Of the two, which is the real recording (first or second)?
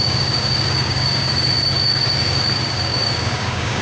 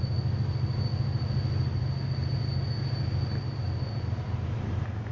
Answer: second